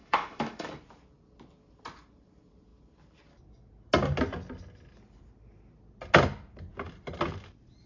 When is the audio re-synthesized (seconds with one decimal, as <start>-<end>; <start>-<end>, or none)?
0.0-0.8